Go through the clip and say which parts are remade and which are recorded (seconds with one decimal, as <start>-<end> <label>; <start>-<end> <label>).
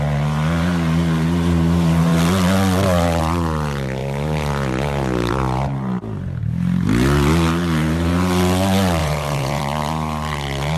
0.0-9.0 recorded; 9.0-9.6 remade; 9.6-10.8 recorded